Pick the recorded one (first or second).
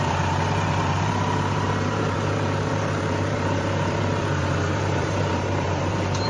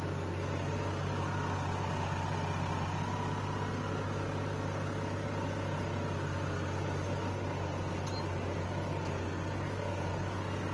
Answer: second